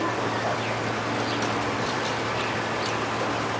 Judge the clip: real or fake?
real